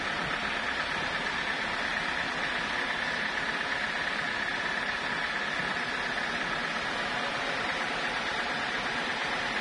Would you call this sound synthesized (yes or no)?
no